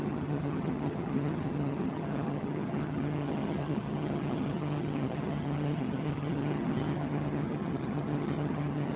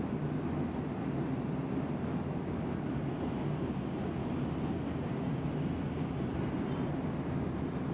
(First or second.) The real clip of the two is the second